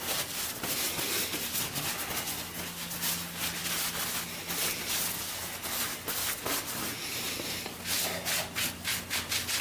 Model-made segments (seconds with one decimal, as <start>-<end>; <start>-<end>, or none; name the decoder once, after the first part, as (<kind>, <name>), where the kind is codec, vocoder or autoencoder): none